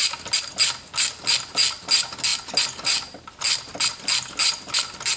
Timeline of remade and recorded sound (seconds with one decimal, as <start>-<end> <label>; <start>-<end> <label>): 0.0-5.2 recorded